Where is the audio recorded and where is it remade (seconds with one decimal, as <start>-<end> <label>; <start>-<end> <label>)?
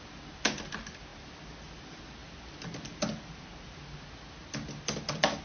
0.0-5.4 recorded